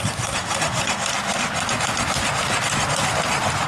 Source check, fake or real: real